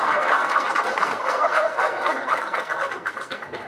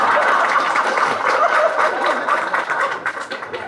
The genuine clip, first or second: second